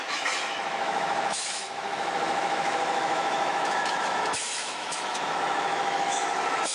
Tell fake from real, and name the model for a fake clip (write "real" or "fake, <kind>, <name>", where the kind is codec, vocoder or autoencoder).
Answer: fake, autoencoder, DAC-VAE